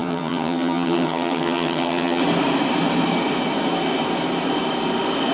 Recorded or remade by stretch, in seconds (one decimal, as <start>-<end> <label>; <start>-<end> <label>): 0.0-2.2 remade; 2.2-5.3 recorded